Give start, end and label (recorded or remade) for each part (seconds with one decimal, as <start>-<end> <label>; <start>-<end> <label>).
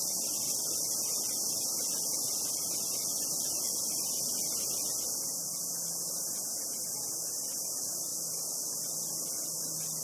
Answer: 0.0-10.0 recorded